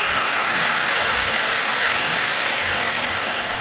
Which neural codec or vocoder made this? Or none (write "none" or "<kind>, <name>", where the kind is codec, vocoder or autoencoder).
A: codec, DAC